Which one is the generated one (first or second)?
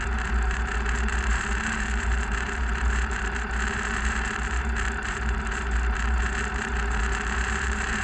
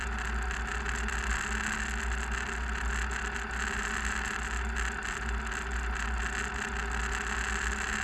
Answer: first